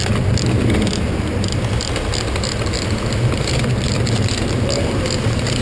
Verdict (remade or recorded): recorded